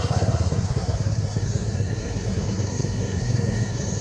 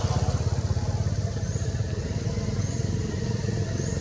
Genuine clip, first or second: second